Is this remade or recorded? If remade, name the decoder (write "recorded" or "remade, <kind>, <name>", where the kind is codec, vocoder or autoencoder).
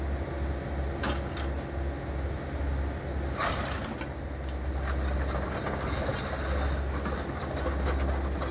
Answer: recorded